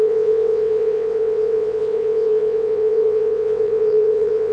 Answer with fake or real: fake